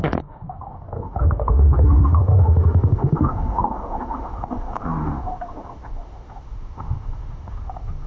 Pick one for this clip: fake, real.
fake